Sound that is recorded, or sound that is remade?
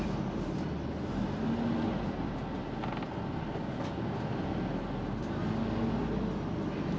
recorded